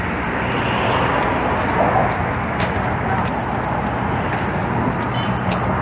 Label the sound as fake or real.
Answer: real